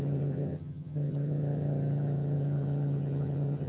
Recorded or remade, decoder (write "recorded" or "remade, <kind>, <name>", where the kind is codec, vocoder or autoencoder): remade, vocoder, HiFi-GAN